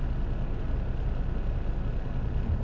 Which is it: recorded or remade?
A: recorded